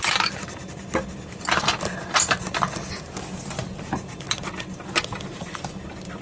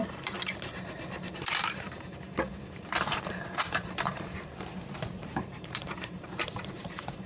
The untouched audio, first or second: first